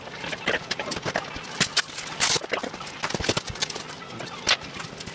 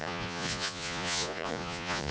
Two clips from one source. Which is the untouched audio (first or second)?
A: first